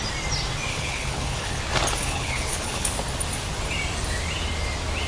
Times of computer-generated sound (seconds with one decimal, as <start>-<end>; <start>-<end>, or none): 0.7-1.6; 2.0-2.9